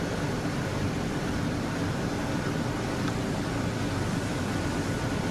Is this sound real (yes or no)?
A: yes